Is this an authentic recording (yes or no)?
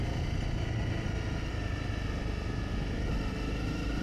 yes